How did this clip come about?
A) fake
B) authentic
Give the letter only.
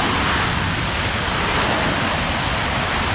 B